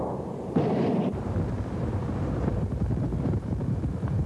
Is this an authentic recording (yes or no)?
no